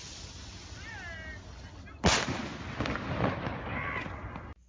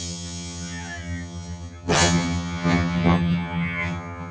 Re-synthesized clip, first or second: second